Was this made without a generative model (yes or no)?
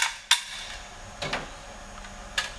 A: yes